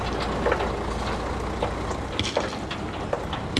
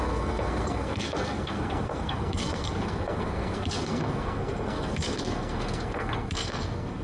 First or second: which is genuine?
first